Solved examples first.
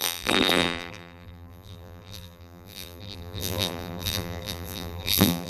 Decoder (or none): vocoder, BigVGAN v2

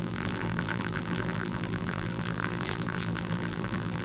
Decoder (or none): vocoder, BigVGAN v2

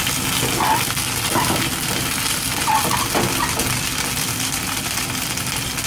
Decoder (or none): none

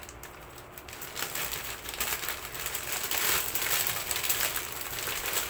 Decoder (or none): none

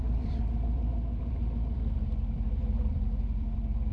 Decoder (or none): vocoder, BigVGAN v2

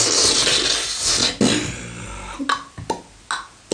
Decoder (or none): none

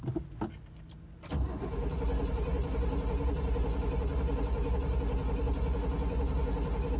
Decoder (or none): none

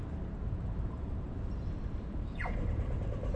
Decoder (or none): vocoder, BigVGAN v2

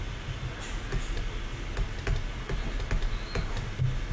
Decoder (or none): none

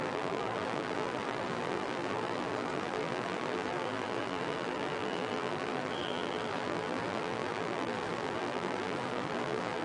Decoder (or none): vocoder, BigVGAN v2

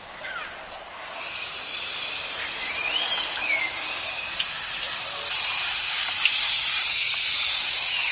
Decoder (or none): vocoder, BigVGAN v2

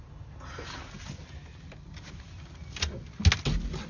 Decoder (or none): none